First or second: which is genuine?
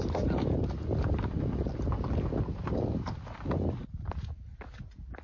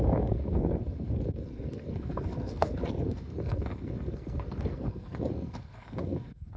first